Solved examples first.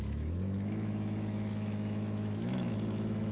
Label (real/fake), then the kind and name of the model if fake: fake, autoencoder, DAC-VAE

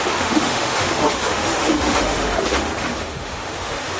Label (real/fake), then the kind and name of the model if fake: fake, autoencoder, DAC-VAE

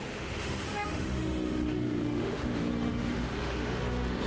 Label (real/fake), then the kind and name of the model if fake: fake, autoencoder, DAC-VAE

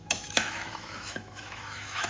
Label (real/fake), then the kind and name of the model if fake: fake, autoencoder, DAC-VAE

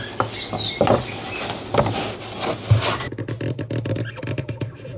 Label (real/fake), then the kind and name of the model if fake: real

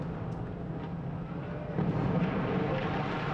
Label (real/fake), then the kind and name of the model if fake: real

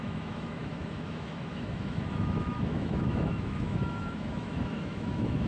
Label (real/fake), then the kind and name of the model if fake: fake, autoencoder, DAC-VAE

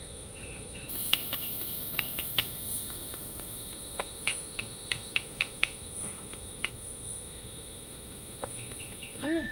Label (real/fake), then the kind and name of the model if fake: fake, autoencoder, DAC-VAE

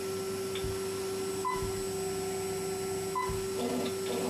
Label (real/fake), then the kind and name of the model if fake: real